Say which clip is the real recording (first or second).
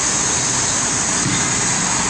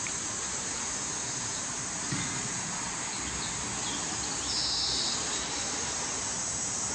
first